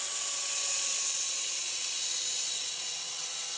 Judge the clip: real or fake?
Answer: fake